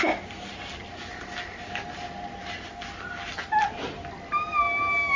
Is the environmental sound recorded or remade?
recorded